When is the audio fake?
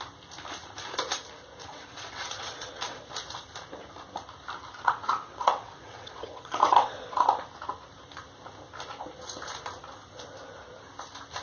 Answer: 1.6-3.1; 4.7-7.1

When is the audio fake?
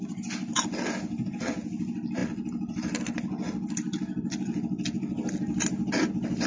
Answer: none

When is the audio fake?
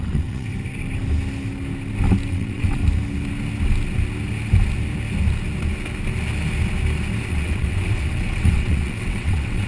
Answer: 0.0-0.5; 2.3-2.8; 7.3-9.7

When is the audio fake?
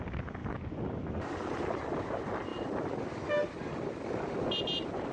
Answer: none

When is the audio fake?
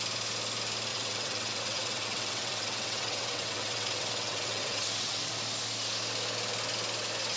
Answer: 0.9-5.3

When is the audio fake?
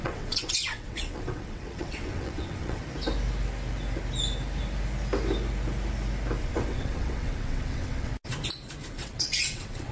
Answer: 0.0-2.8; 6.4-8.1; 8.9-9.9